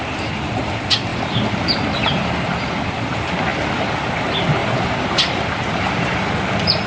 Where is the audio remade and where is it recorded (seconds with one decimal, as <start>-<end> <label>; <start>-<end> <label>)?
0.0-1.1 recorded; 1.1-2.9 remade; 2.9-3.5 recorded; 3.5-4.1 remade; 4.1-4.6 recorded; 4.6-6.4 remade; 6.4-6.9 recorded